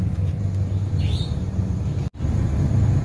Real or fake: real